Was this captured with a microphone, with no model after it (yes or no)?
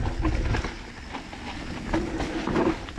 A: yes